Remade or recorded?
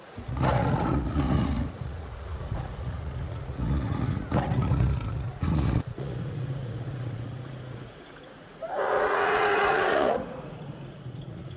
remade